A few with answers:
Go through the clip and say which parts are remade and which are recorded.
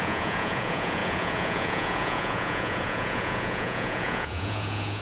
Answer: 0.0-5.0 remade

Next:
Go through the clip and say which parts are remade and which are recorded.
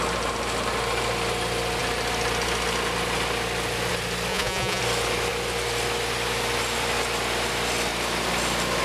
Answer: 0.0-4.3 recorded; 4.3-4.8 remade; 4.8-8.8 recorded